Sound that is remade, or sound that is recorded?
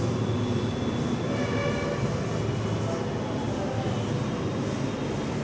recorded